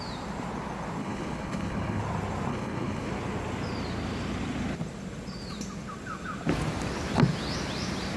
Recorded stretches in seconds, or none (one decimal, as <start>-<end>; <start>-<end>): 0.0-1.0; 2.0-2.5; 3.1-8.2